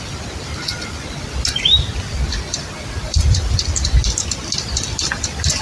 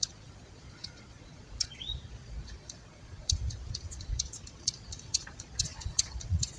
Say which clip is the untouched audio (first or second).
first